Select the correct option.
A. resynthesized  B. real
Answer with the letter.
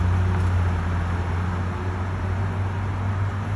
B